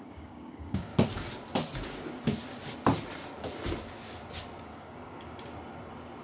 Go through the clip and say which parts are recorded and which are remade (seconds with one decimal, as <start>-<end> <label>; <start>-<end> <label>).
0.0-0.9 remade; 0.9-4.6 recorded; 4.6-5.5 remade; 5.5-6.2 recorded